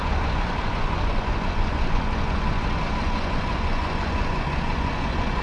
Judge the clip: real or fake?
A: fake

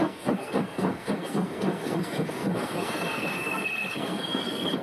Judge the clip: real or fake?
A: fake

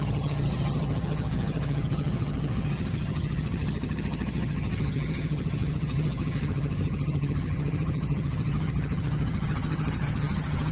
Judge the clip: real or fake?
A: fake